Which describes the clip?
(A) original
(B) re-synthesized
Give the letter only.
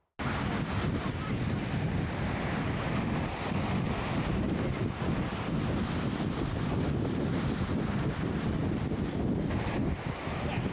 A